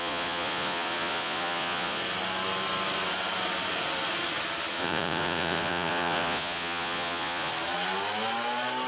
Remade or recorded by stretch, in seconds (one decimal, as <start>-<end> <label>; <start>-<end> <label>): 0.0-2.0 remade; 2.0-4.7 recorded; 4.7-7.5 remade; 7.5-8.9 recorded